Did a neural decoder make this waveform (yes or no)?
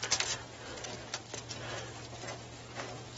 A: no